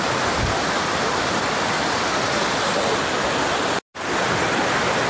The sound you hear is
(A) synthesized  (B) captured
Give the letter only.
B